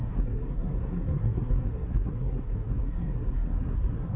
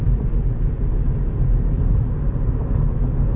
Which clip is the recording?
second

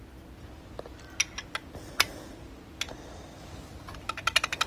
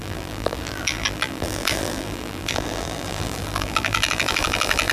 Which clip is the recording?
first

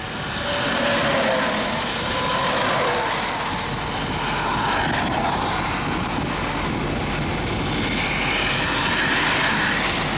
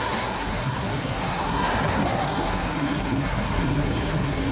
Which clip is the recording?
first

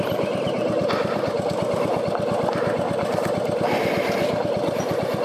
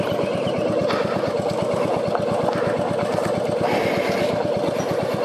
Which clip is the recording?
second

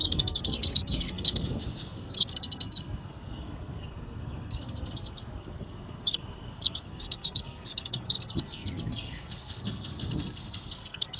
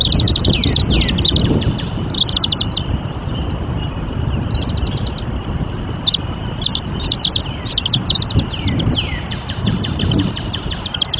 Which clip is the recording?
second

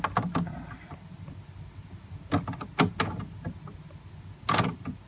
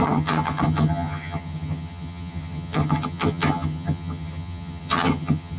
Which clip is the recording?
first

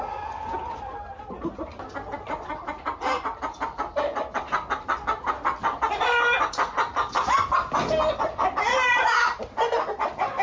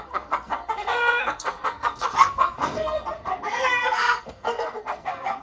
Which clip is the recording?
first